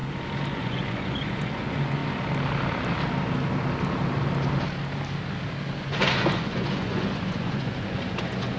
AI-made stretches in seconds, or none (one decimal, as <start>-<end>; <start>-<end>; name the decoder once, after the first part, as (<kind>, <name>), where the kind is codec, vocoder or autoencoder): 0.5-2.0 (vocoder, Vocos); 5.8-8.6